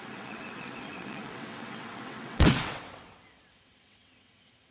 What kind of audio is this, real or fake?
fake